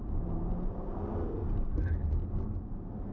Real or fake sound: real